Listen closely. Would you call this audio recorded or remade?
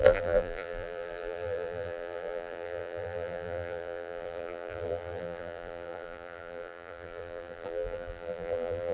remade